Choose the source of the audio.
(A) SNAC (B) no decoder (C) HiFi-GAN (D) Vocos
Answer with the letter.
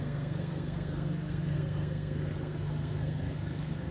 A